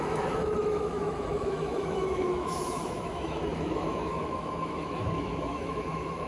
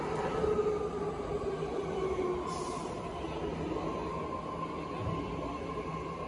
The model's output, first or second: first